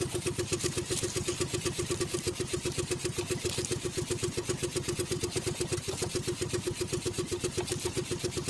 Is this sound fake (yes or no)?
no